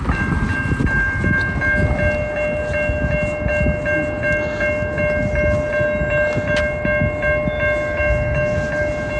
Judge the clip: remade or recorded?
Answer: recorded